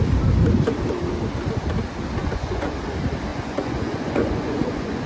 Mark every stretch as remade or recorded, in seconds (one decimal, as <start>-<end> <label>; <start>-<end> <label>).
0.0-2.2 recorded; 2.2-2.7 remade; 2.7-3.3 recorded; 3.3-5.1 remade